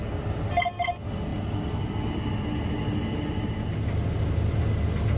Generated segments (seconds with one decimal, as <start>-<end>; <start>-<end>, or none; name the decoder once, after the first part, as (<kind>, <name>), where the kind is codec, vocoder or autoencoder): none